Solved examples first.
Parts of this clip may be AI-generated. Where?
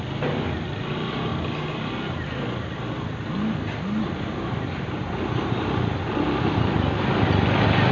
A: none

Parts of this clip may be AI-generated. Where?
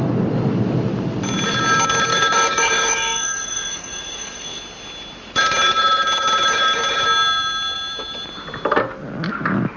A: 2.1-4.6 (codec, DAC)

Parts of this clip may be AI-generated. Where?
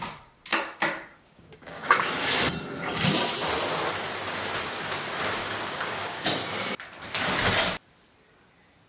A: 0.5-2.3 (codec, DAC); 5.4-6.2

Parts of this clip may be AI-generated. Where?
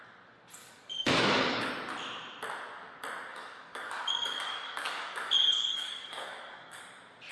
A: 0.6-1.7 (codec, DAC); 3.3-6.8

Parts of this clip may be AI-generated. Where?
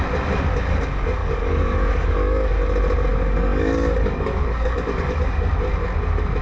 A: 1.2-2.5 (codec, DAC); 3.1-5.5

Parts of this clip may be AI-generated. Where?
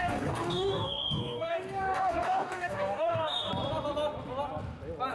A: 0.0-3.5 (codec, DAC)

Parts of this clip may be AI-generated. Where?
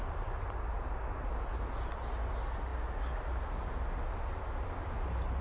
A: none